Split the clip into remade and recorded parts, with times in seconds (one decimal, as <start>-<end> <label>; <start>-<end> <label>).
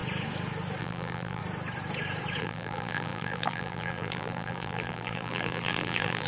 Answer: 0.0-0.8 recorded; 0.8-1.4 remade; 1.4-2.4 recorded; 2.4-6.3 remade